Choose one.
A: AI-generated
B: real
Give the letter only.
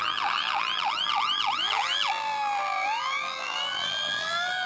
A